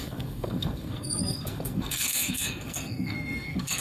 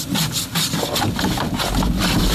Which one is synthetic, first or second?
first